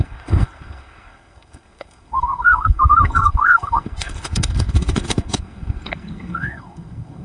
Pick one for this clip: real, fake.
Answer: fake